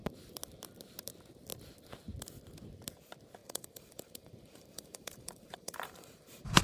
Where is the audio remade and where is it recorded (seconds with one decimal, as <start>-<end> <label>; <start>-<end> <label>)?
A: 0.0-3.4 recorded; 3.4-6.6 remade